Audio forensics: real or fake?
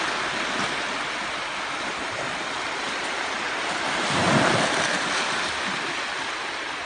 real